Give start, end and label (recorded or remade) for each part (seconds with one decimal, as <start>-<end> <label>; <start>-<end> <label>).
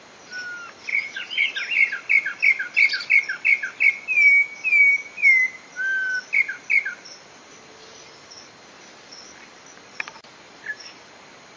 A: 0.0-0.9 recorded; 0.9-1.5 remade; 1.5-11.6 recorded